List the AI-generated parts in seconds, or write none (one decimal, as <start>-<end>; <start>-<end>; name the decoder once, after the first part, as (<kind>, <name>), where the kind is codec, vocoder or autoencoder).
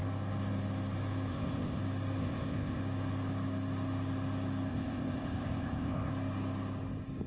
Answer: 1.3-1.8 (codec, ZipCodec); 2.2-2.8; 4.7-6.1